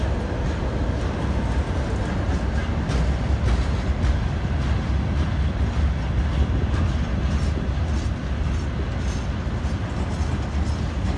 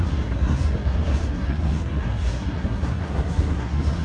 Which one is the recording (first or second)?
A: first